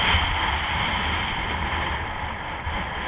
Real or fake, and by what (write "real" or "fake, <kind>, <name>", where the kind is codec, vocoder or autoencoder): real